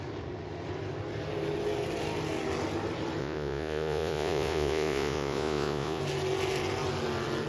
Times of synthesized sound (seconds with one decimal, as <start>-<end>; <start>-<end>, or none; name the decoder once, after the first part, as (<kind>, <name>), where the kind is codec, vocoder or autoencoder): 3.2-6.0 (vocoder, Vocos)